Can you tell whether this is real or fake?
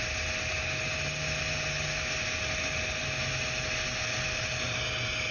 real